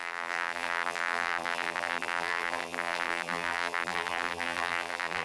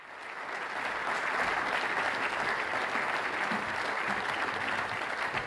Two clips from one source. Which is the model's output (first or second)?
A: first